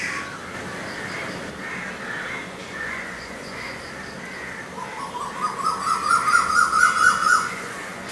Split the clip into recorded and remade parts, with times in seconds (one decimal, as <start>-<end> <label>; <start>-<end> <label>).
0.0-2.4 recorded; 2.4-3.9 remade; 3.9-7.2 recorded; 7.2-8.1 remade